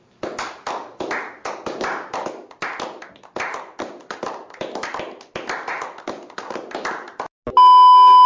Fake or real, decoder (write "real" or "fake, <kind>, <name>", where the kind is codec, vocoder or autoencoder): real